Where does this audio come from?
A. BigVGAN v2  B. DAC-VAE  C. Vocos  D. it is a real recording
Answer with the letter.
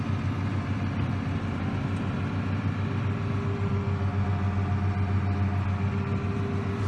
D